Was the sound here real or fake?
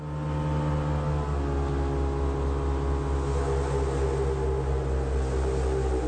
real